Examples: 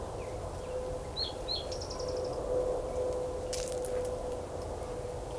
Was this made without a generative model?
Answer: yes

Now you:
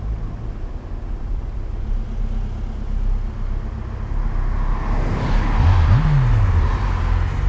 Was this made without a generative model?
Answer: yes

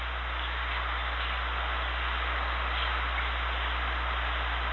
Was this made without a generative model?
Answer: yes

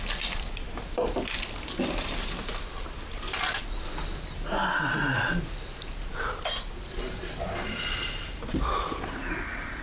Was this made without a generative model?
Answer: yes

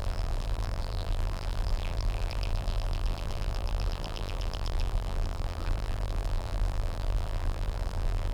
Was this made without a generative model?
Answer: no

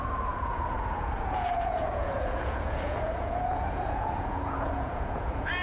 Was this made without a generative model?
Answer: no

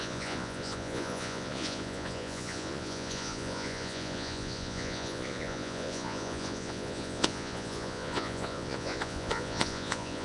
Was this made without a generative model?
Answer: no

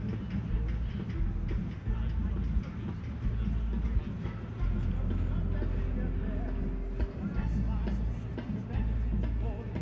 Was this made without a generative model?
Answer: yes